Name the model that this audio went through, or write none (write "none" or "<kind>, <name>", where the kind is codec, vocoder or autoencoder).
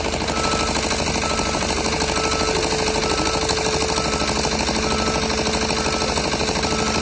none